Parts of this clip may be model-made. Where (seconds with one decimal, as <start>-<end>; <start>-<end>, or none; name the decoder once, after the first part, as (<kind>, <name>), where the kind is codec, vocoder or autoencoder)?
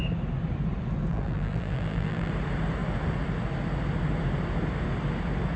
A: 1.1-2.3 (vocoder, BigVGAN v2)